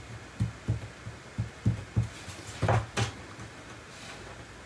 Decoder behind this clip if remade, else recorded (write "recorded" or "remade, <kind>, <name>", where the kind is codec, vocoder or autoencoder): recorded